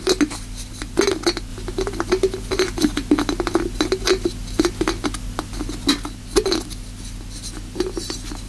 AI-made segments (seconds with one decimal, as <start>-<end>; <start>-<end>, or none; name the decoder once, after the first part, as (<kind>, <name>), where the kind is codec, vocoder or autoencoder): none